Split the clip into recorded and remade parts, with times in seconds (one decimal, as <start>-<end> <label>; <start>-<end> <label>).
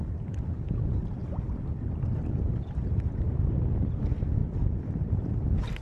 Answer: 0.0-5.8 remade